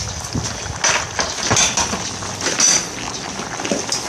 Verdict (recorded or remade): recorded